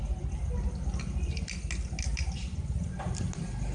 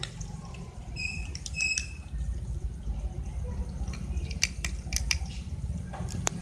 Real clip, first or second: first